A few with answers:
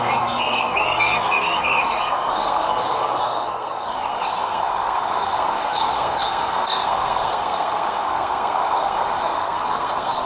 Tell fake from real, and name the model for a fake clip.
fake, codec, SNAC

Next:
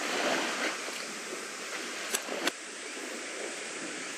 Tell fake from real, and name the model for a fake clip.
real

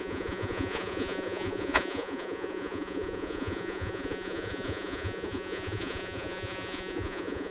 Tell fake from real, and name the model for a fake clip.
fake, vocoder, Vocos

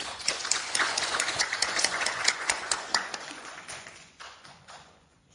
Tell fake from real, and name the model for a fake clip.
fake, vocoder, Vocos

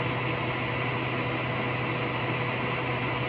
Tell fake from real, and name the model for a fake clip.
real